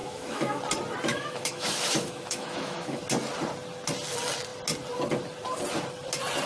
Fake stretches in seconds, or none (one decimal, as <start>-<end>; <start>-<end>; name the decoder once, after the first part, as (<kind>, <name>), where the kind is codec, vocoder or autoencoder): 0.0-0.6 (autoencoder, DAC-VAE); 1.1-3.0